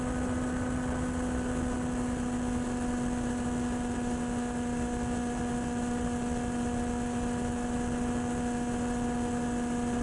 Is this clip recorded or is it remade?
recorded